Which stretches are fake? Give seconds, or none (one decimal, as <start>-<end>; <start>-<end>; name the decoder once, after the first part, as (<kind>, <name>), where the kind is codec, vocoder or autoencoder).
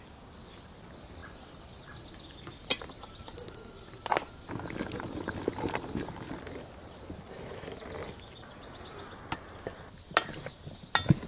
none